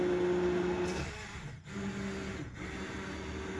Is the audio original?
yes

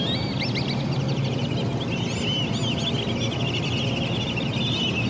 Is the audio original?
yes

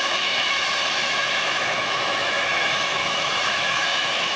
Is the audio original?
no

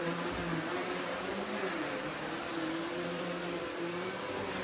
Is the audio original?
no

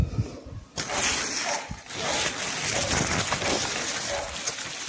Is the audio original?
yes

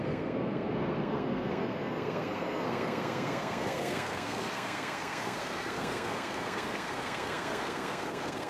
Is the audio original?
no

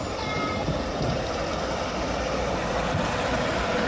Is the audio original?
yes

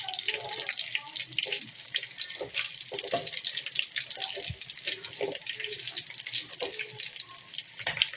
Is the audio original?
yes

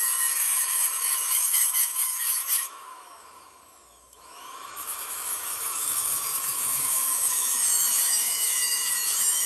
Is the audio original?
no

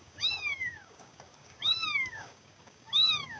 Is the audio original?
no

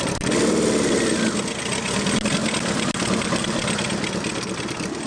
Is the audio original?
yes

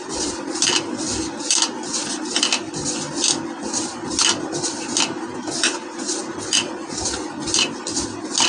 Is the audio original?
yes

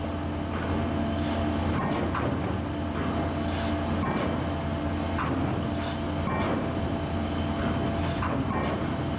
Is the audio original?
yes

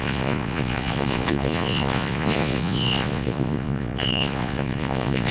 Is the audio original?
no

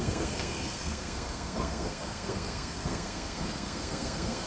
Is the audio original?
no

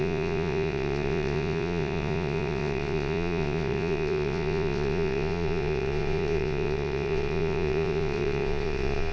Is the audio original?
no